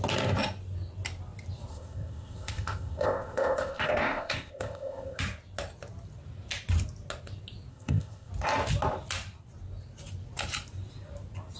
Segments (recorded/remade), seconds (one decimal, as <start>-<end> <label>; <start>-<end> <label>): 0.0-1.7 recorded; 1.7-5.2 remade; 5.2-7.7 recorded; 7.7-8.3 remade; 8.3-11.6 recorded